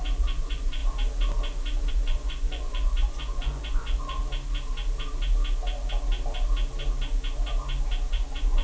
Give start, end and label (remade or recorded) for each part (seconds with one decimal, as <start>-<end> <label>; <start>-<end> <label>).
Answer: 0.0-0.8 remade; 0.8-1.9 recorded; 1.9-4.2 remade; 4.2-8.1 recorded; 8.1-8.6 remade